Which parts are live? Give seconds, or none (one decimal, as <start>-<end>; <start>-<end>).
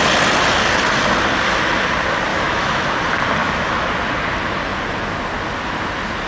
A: 0.0-2.3; 2.8-3.4; 3.9-6.3